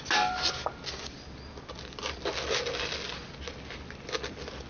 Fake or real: real